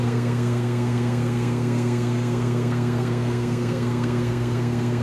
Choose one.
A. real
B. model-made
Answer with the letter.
B